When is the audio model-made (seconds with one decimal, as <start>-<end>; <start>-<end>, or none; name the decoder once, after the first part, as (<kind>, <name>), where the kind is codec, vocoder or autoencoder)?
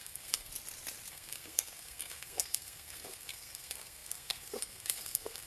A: 0.0-0.5 (codec, SNAC); 1.1-5.5